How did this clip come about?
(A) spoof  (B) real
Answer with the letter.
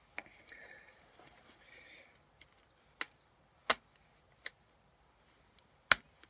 B